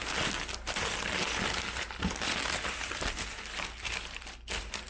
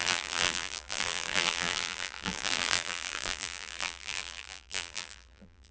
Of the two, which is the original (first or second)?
first